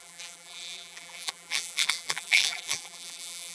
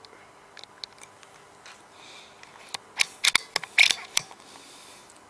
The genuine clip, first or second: second